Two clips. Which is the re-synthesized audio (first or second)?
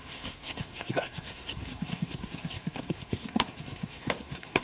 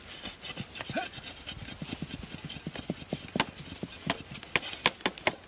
first